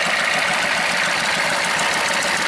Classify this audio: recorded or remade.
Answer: recorded